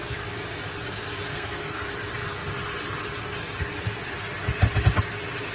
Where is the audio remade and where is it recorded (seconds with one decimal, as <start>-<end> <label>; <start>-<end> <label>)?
0.0-1.3 recorded; 1.3-1.9 remade; 1.9-5.5 recorded